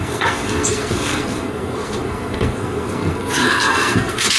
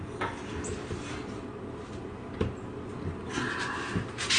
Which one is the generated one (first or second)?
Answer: first